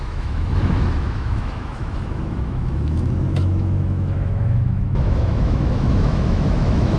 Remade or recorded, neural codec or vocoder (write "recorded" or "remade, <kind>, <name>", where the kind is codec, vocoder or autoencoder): remade, autoencoder, DAC-VAE